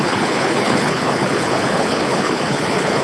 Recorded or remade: remade